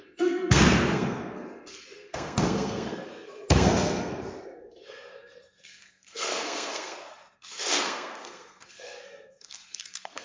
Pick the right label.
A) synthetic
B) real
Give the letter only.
A